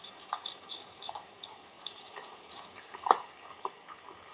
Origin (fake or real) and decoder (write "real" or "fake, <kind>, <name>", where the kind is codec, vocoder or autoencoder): fake, codec, DAC